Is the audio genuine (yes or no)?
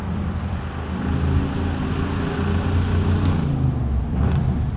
yes